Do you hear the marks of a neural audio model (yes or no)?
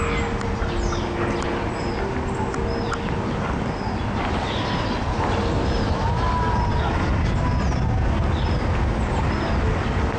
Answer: no